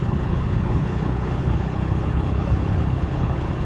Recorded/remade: remade